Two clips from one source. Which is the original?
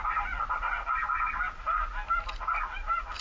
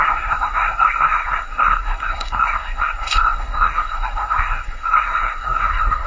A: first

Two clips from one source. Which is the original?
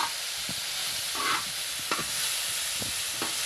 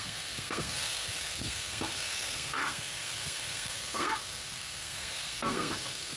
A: first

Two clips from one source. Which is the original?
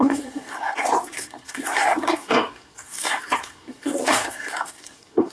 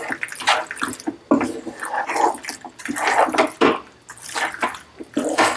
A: second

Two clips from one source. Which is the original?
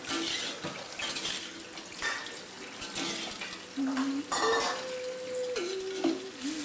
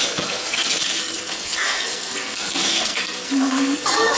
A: first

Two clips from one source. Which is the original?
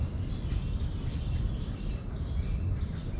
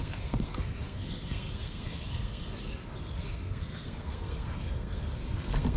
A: first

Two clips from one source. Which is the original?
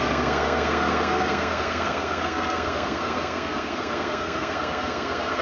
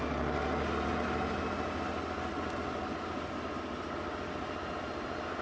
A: second